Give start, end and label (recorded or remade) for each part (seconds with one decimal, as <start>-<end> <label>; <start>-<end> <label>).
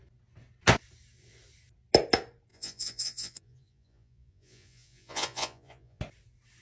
0.0-2.5 recorded; 2.5-6.0 remade; 6.0-6.6 recorded